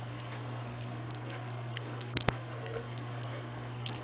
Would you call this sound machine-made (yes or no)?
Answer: yes